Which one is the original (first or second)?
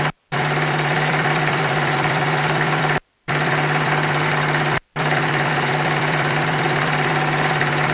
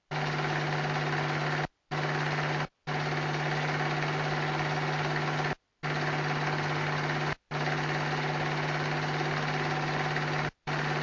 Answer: second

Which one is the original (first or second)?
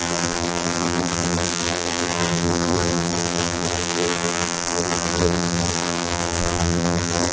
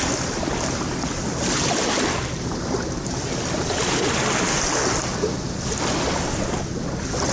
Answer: second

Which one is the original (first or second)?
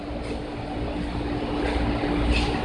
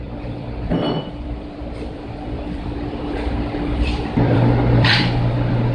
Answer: first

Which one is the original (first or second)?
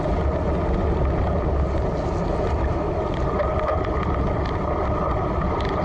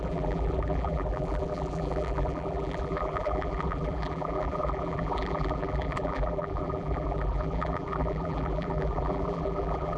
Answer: first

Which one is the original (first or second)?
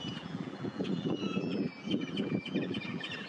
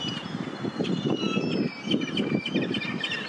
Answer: second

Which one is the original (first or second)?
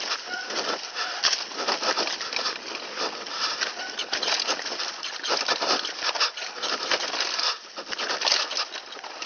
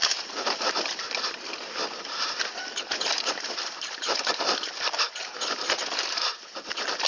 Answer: first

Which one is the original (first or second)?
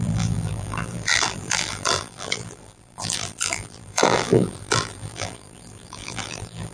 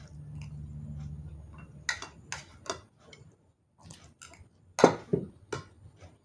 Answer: second